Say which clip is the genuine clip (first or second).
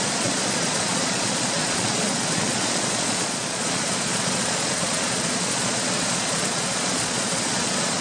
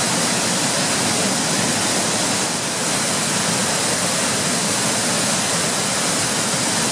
second